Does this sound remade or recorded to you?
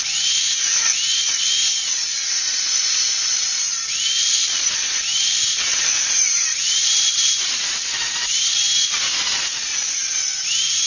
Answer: remade